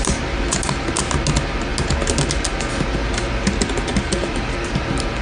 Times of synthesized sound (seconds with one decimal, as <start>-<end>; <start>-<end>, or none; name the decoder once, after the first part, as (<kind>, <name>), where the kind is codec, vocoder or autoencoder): 3.9-4.5 (vocoder, BigVGAN v2)